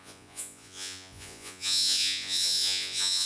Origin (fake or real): fake